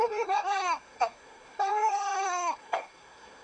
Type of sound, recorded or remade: remade